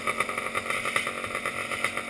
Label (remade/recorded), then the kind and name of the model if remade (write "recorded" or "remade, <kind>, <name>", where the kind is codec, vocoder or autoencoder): recorded